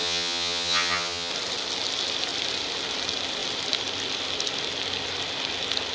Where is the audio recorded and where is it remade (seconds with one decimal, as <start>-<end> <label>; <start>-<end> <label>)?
0.0-1.3 remade; 1.3-5.9 recorded